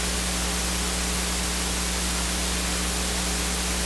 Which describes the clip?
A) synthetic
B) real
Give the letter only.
B